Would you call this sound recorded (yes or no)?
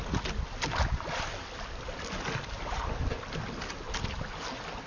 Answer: yes